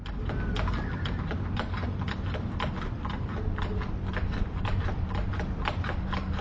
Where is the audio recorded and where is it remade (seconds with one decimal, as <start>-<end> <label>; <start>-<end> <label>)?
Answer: 0.0-6.4 recorded